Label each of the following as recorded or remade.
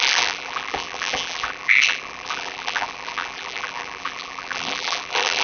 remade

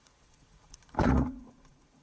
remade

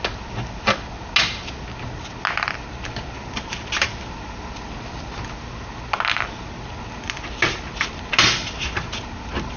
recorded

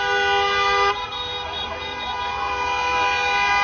recorded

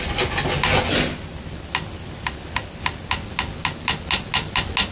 recorded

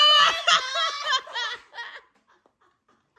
recorded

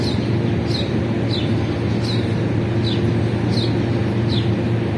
recorded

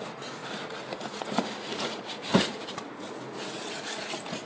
remade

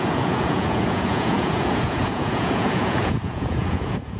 remade